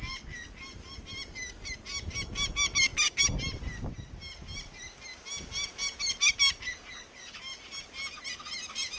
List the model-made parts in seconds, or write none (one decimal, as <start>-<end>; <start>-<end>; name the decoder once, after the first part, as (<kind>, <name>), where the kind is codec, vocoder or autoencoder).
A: none